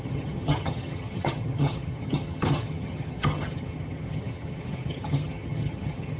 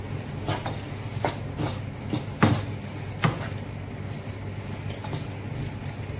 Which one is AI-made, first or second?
first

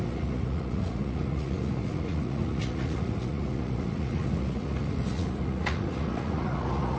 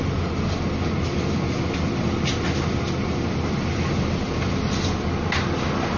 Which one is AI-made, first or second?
first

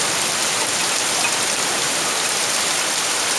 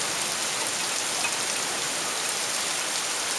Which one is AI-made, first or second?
first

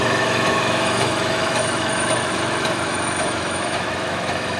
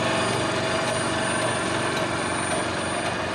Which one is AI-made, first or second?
first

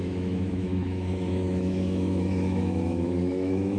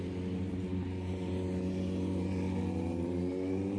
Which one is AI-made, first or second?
first